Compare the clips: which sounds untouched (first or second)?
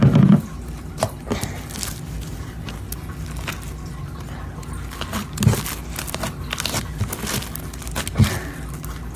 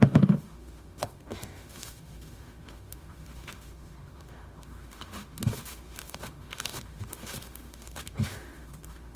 first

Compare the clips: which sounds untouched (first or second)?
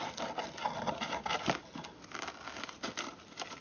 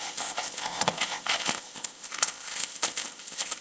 first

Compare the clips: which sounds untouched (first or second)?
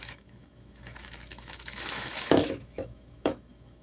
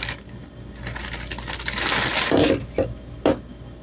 second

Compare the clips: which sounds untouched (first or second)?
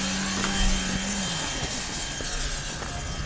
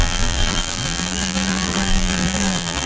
first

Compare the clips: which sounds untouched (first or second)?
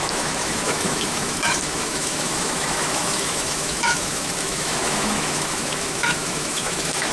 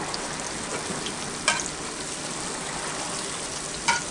second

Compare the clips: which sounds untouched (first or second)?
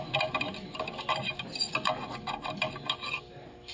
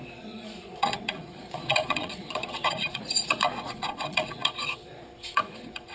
first